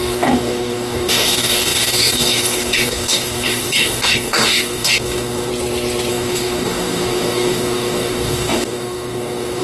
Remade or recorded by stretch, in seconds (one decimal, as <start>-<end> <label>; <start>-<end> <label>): 0.0-5.5 remade; 5.5-6.1 recorded; 6.1-9.6 remade